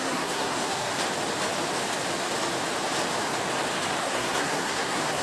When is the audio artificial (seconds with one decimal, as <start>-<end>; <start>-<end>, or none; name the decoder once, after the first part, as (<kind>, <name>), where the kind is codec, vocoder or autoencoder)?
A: 0.0-0.9 (codec, SNAC); 4.0-5.2